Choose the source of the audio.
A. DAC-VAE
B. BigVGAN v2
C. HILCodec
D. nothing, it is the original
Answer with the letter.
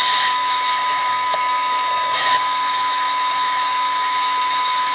A